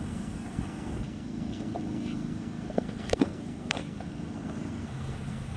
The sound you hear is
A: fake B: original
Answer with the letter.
A